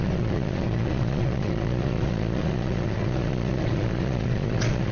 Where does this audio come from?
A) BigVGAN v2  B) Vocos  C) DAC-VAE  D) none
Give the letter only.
B